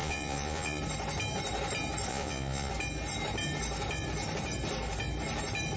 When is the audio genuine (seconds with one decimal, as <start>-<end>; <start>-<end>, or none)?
0.8-2.1; 2.7-5.8